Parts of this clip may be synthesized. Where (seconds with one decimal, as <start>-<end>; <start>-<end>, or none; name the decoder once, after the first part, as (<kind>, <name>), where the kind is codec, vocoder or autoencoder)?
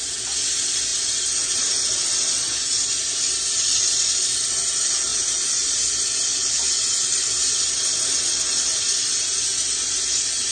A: none